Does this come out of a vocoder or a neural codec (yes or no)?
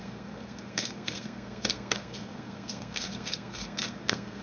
yes